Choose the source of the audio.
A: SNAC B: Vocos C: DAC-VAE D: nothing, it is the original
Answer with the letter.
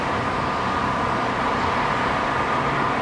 D